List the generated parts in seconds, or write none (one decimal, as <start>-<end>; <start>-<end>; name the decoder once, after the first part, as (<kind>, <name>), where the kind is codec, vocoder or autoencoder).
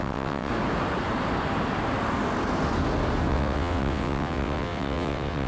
0.0-0.5 (vocoder, WaveNeXt); 3.3-5.5